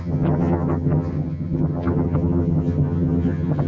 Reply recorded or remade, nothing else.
remade